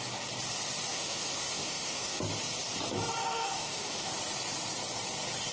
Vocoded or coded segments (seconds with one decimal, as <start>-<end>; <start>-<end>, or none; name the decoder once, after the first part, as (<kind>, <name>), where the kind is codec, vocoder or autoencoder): 0.9-2.2 (autoencoder, DAC-VAE); 3.2-4.1